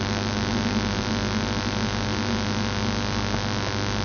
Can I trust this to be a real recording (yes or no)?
yes